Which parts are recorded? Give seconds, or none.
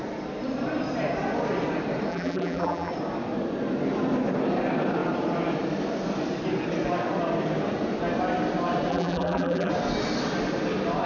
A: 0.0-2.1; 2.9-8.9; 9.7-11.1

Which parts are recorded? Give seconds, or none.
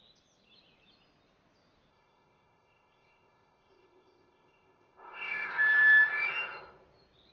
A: 0.0-1.9; 5.5-7.3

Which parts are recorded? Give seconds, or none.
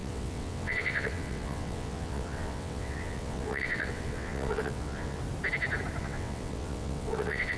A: 5.2-6.0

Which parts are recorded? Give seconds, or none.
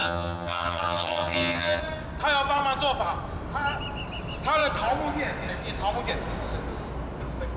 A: 1.8-7.6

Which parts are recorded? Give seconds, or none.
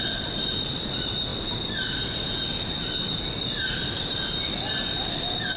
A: 0.0-5.6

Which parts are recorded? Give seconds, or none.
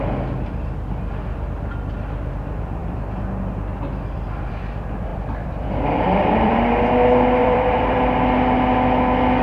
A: 0.0-5.1; 6.8-7.4; 8.0-9.4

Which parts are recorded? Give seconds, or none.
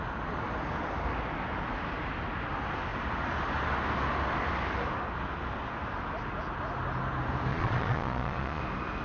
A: 0.0-7.5; 8.6-9.0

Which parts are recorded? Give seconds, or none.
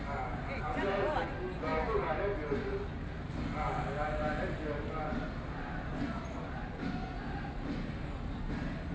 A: 0.0-8.9